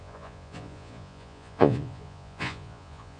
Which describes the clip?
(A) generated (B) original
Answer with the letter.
A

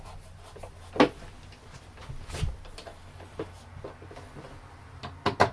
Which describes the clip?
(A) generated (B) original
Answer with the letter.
B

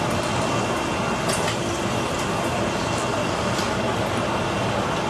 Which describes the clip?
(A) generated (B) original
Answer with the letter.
B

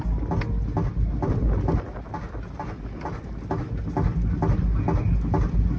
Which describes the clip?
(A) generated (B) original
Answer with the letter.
B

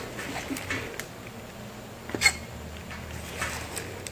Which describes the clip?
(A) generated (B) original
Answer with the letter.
B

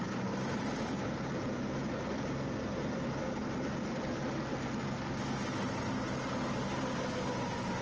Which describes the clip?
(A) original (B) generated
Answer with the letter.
A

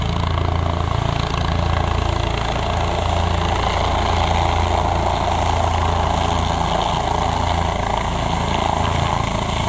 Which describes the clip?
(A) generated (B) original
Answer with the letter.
B